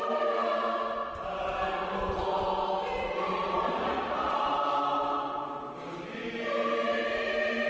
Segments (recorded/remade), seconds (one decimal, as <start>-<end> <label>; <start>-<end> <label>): 0.0-3.3 recorded; 3.3-4.4 remade; 4.4-7.7 recorded